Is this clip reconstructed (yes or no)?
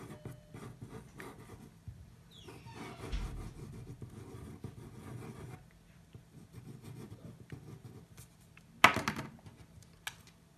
no